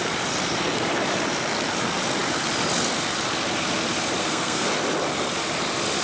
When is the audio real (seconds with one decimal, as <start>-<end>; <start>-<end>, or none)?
0.0-4.2; 4.7-6.0